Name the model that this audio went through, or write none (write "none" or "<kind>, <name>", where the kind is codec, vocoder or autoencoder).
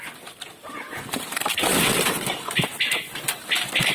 none